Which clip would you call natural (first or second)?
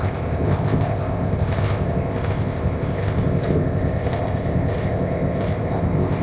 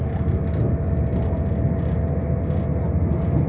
second